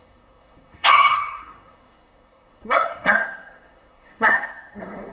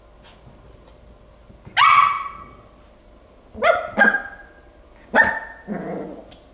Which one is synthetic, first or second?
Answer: first